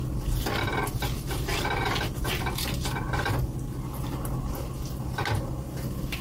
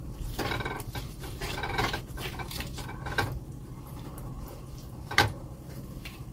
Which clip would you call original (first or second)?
first